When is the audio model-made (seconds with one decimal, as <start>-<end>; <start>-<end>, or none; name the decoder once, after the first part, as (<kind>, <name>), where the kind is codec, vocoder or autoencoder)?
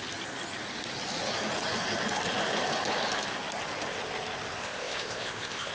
4.6-5.7 (codec, ZipCodec)